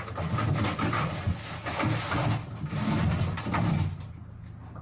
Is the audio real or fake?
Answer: real